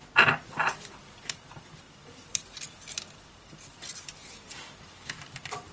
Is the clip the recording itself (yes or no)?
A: yes